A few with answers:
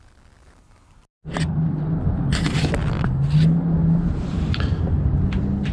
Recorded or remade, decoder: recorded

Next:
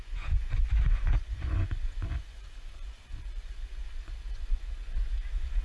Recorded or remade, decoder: remade, vocoder, Vocos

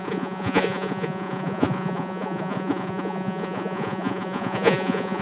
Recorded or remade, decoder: remade, vocoder, Vocos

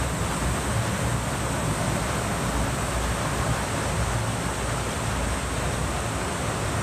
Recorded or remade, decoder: recorded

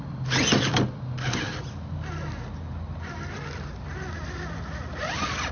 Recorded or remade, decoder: recorded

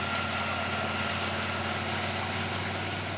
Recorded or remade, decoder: recorded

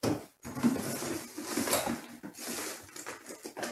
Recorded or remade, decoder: recorded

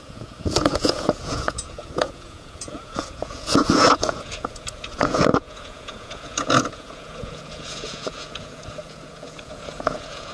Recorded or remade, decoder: remade, vocoder, Vocos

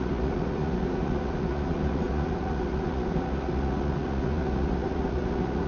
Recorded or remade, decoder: remade, vocoder, Vocos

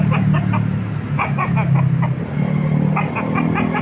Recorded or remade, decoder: recorded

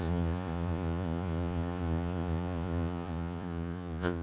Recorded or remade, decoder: remade, vocoder, Vocos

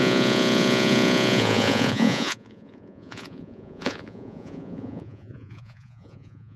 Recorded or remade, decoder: remade, vocoder, Vocos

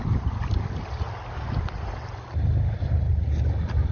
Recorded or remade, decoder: recorded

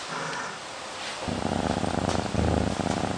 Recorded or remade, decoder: recorded